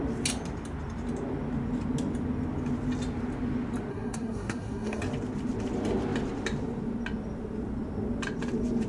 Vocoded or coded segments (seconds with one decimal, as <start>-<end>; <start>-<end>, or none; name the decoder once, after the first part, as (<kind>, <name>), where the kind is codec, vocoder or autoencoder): 3.9-5.0 (codec, SNAC)